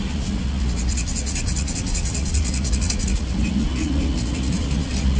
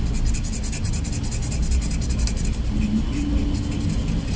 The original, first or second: second